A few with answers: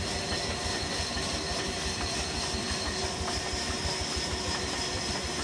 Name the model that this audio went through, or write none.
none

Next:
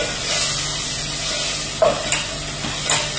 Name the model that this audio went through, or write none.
none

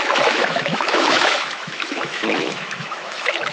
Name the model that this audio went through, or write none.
autoencoder, DAC-VAE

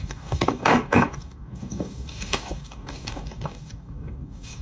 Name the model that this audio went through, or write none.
codec, DAC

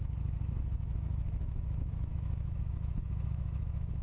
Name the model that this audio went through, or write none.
autoencoder, DAC-VAE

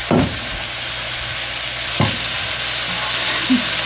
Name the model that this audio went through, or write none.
none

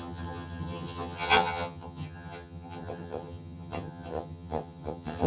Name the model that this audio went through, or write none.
vocoder, HiFi-GAN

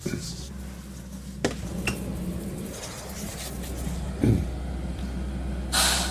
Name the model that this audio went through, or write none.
none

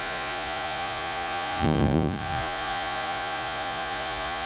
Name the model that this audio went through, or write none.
vocoder, Vocos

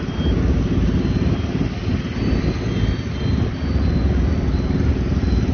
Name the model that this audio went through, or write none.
none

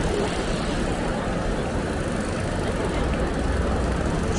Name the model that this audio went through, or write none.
none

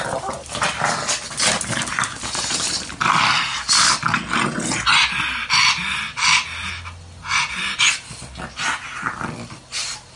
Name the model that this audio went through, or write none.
none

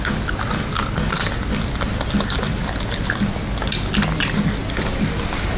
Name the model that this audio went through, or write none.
none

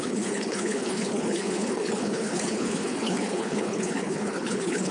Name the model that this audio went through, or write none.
codec, HILCodec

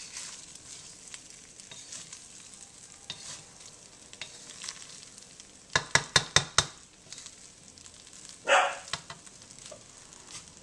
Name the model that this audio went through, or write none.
none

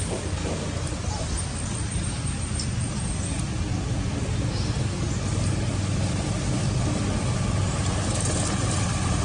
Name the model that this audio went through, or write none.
none